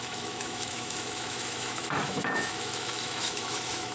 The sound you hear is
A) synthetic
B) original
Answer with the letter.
A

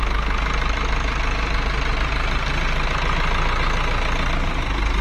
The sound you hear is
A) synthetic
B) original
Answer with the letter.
B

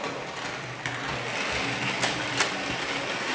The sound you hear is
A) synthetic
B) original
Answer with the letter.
B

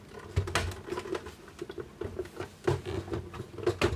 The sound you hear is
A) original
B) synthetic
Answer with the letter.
A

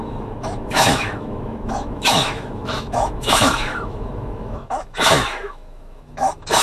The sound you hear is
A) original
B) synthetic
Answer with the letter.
B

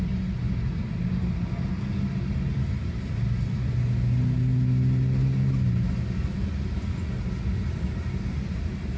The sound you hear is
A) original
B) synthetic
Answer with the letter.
A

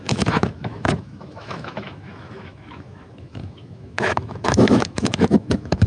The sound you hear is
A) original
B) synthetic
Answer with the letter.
B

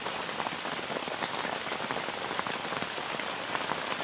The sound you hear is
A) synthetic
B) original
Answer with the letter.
B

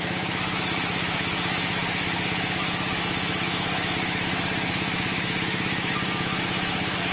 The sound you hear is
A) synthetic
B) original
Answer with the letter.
A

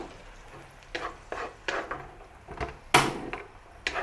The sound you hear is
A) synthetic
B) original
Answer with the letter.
B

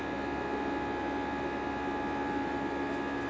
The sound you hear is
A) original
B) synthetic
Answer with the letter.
A